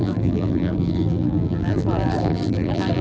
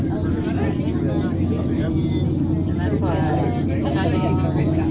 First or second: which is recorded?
second